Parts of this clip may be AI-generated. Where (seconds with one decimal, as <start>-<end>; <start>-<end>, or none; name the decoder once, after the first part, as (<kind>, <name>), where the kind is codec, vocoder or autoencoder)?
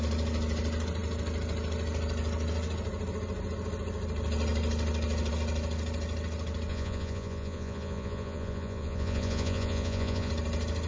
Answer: 6.7-10.3 (vocoder, Vocos)